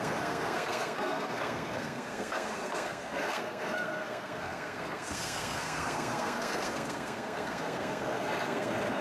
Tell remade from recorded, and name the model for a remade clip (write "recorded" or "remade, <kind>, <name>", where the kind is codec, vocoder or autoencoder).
remade, codec, SNAC